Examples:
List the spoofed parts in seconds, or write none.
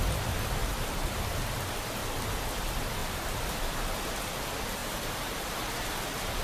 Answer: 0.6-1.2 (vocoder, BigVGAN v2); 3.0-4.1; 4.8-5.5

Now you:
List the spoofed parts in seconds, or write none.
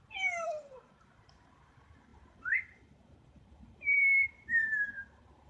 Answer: 0.0-5.5 (vocoder, BigVGAN v2)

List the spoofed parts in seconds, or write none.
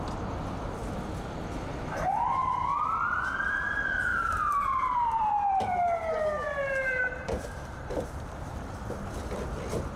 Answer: 4.1-8.9 (vocoder, BigVGAN v2)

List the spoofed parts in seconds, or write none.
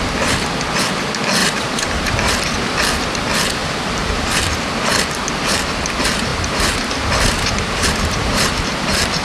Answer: 1.4-2.1 (vocoder, BigVGAN v2); 3.6-4.8; 6.3-8.5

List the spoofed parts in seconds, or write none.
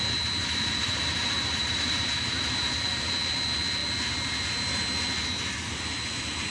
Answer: 0.4-3.1 (vocoder, BigVGAN v2)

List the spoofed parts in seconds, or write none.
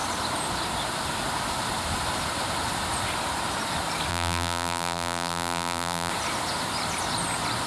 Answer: 4.1-6.1 (vocoder, BigVGAN v2)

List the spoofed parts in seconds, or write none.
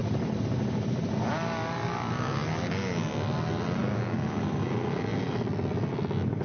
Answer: none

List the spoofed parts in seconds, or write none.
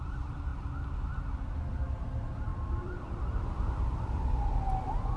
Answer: 0.0-0.5 (vocoder, BigVGAN v2); 1.7-5.2